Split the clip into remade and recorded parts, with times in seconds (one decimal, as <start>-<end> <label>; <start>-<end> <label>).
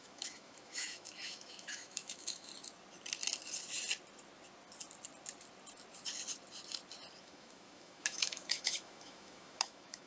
0.0-2.5 remade; 2.5-7.2 recorded; 7.2-10.1 remade